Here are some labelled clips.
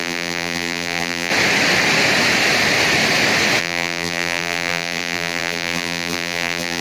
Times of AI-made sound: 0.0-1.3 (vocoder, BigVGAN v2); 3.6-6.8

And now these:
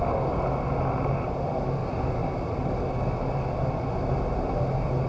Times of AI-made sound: none